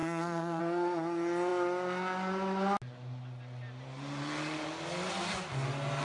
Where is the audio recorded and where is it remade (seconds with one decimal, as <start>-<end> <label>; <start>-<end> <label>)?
0.0-0.6 remade; 0.6-6.0 recorded